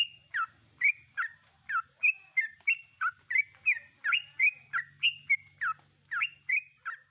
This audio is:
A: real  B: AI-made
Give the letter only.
A